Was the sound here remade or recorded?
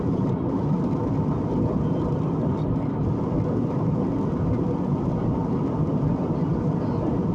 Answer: recorded